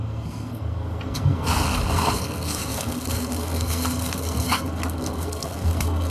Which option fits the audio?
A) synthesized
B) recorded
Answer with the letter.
A